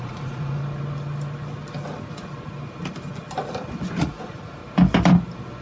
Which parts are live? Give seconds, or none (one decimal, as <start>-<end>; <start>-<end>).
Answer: 0.6-4.0; 4.6-5.6